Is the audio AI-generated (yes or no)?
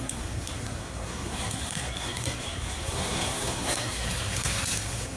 yes